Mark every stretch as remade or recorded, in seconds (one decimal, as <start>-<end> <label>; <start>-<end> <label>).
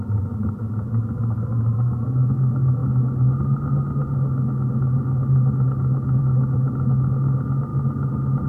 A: 0.0-8.5 recorded